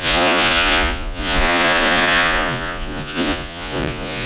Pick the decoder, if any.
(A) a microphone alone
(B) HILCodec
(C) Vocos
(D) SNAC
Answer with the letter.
C